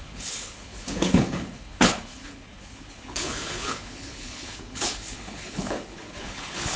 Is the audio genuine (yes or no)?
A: no